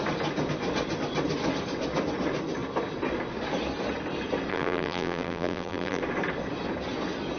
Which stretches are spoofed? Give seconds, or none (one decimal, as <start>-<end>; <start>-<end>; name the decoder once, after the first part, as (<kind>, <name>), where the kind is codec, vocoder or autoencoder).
4.5-6.0 (vocoder, BigVGAN v2)